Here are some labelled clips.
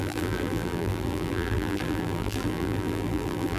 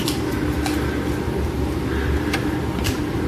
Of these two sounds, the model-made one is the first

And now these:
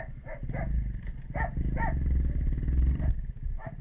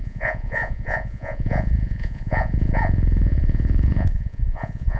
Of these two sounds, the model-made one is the second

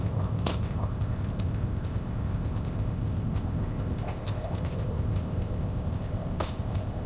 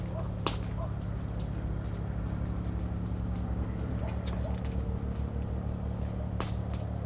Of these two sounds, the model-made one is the first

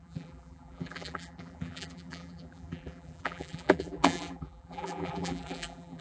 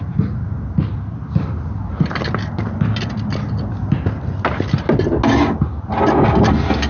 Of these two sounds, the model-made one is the first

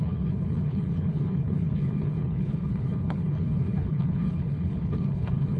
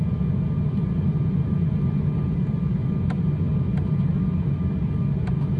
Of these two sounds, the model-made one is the first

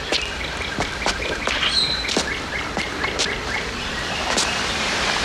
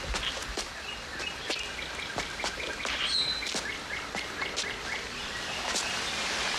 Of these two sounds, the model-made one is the first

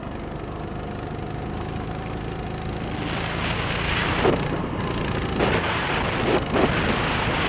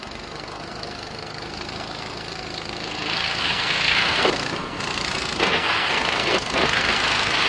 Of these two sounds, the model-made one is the second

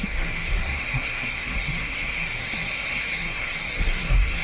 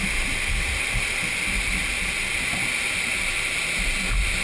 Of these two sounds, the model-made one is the first